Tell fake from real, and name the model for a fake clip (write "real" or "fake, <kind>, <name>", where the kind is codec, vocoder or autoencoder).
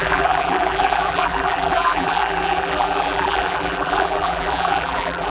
fake, vocoder, BigVGAN v2